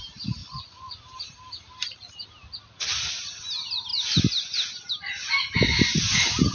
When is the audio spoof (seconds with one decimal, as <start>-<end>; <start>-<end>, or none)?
0.4-1.0